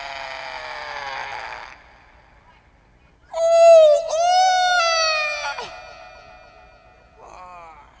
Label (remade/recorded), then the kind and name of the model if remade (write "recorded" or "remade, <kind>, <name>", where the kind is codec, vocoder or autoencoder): recorded